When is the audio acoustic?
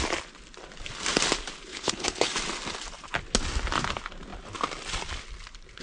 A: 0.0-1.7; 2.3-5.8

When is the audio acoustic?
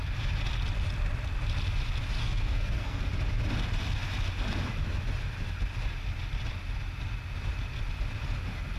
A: 0.0-2.2; 3.0-8.8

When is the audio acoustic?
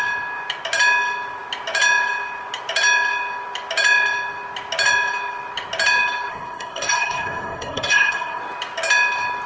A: 0.0-6.3; 8.4-9.5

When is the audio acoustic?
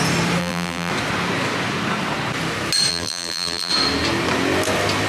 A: 0.0-0.4; 0.9-2.9; 3.7-5.1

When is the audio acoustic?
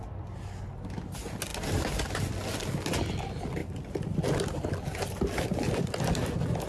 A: 0.0-3.6; 4.2-6.7